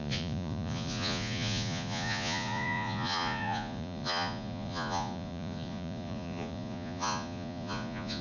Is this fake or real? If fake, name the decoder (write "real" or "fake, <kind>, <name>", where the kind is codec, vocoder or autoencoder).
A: fake, vocoder, Vocos